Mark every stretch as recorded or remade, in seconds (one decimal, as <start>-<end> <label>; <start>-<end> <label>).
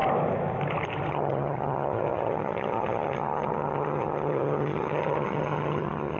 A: 0.0-1.1 recorded; 1.1-6.2 remade